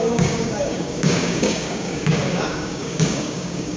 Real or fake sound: fake